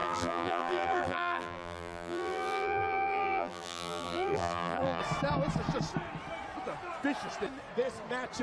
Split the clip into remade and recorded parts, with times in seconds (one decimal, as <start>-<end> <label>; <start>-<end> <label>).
0.0-5.0 remade; 5.0-8.4 recorded